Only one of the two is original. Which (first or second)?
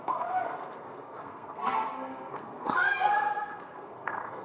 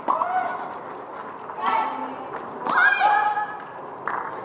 second